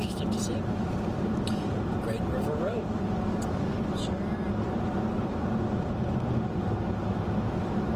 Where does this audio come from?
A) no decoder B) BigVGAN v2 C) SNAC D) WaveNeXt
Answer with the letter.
A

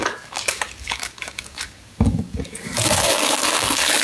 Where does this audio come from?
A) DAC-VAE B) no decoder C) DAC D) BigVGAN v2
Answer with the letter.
C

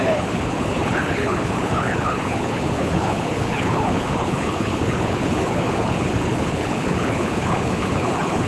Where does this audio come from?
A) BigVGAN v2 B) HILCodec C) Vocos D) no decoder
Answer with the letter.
B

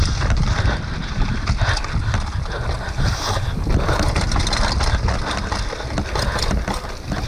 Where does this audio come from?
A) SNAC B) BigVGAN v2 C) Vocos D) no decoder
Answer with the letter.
D